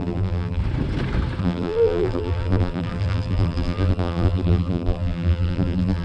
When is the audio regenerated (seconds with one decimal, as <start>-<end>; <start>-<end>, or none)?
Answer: 0.0-0.6; 1.4-6.0